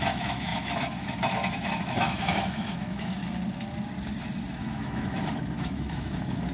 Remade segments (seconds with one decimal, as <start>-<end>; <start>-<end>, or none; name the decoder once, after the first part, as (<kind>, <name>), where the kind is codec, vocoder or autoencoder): 0.0-3.2 (autoencoder, DAC-VAE); 4.5-6.5

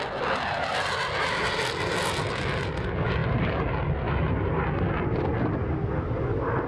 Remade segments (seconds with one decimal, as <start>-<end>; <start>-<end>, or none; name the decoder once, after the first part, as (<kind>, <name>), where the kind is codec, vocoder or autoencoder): none